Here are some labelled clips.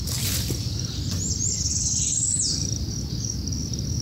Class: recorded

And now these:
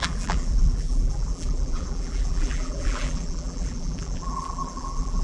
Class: remade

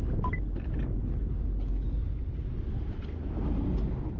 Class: recorded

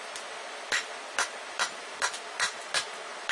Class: remade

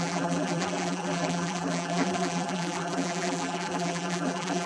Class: remade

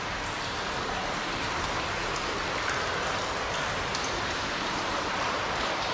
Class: recorded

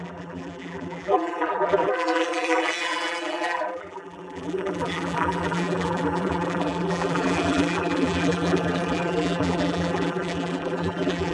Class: remade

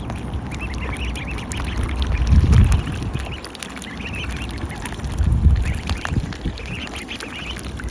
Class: recorded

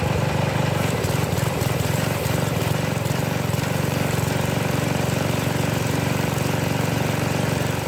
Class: remade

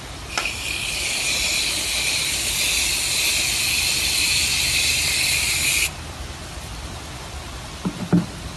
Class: remade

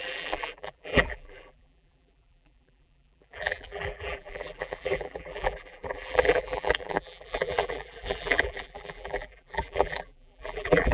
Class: remade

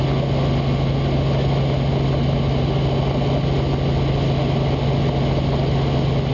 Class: recorded